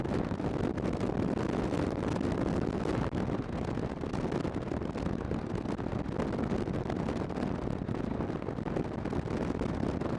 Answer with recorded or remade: recorded